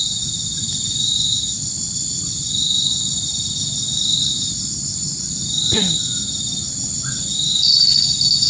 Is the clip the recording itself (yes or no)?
no